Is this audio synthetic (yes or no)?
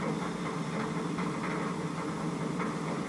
no